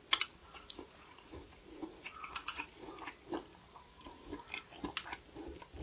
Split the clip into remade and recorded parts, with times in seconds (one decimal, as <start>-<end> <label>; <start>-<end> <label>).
0.0-0.4 recorded; 0.4-2.9 remade; 2.9-3.7 recorded; 3.7-4.3 remade; 4.3-5.8 recorded